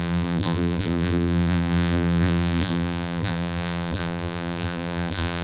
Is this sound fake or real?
fake